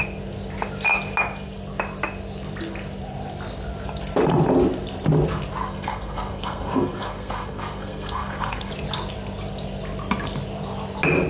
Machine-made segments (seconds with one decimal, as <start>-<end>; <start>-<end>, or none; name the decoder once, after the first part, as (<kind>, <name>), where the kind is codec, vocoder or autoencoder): 5.6-8.7 (codec, SNAC)